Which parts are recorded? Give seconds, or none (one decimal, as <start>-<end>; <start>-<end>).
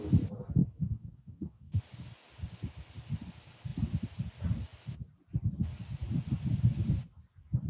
0.0-0.6; 1.8-7.7